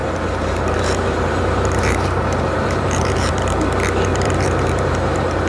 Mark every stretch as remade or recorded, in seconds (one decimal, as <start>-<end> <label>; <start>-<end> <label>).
0.0-3.3 remade; 3.3-4.1 recorded; 4.1-5.5 remade